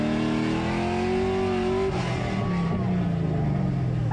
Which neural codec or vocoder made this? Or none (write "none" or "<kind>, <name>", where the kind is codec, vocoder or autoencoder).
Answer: none